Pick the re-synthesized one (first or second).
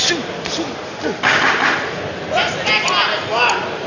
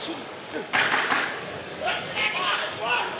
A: second